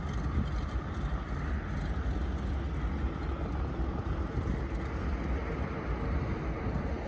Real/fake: real